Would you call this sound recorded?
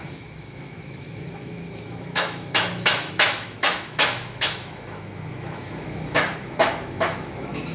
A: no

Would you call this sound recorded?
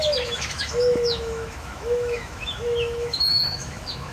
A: no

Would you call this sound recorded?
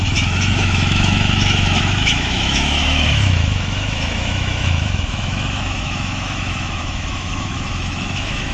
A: no